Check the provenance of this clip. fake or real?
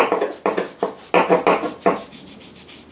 real